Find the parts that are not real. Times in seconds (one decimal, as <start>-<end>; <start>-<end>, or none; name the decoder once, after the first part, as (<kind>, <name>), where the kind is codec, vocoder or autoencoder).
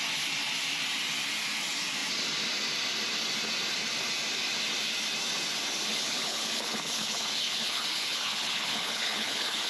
5.9-9.7 (codec, HILCodec)